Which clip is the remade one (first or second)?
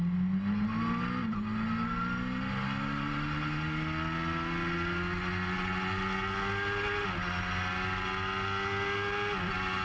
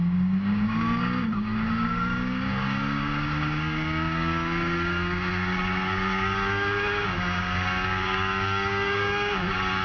second